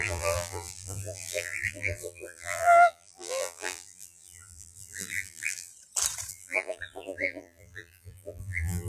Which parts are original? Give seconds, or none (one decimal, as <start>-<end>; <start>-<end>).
5.7-6.3

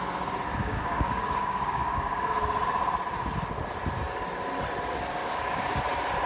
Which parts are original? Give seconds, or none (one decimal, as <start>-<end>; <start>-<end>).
0.0-0.6; 2.2-5.2; 5.8-6.3

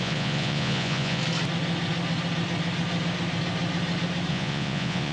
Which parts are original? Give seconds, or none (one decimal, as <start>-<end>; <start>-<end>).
1.2-4.3

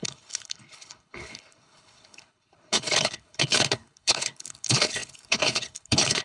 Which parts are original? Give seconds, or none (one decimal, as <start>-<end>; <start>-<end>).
none

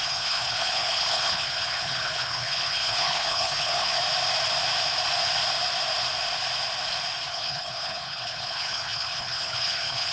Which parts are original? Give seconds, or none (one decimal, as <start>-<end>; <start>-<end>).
4.0-7.3